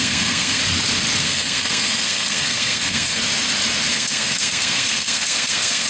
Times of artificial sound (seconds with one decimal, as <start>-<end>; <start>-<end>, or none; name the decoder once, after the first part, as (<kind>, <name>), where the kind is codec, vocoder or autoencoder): 0.0-0.6 (codec, SNAC); 1.2-3.2; 3.9-5.9